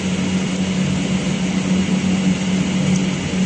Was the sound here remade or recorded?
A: recorded